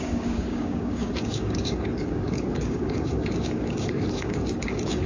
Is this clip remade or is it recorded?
remade